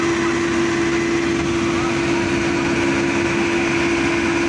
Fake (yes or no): no